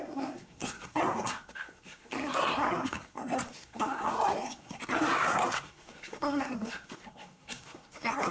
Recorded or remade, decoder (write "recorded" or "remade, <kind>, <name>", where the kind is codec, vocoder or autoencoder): remade, codec, SNAC